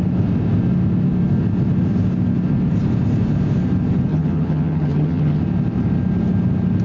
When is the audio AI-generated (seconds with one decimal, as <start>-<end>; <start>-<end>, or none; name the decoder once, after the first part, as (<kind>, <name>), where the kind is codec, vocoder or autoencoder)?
4.1-5.4 (vocoder, HiFi-GAN)